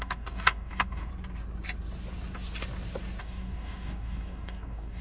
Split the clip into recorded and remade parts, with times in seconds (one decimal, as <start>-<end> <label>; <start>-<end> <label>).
0.0-1.1 remade; 1.1-3.2 recorded; 3.2-5.0 remade